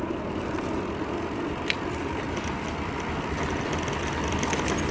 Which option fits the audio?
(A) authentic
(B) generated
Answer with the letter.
A